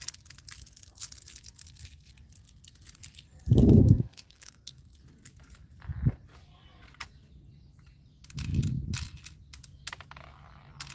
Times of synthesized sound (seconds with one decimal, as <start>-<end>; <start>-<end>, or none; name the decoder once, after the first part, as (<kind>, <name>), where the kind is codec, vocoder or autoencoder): 3.6-4.8 (codec, SNAC)